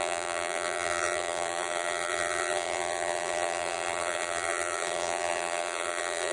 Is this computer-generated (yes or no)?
yes